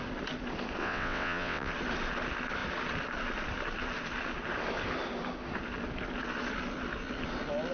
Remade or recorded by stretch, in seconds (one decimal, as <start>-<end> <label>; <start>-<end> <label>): 0.0-0.8 recorded; 0.8-1.7 remade; 1.7-7.7 recorded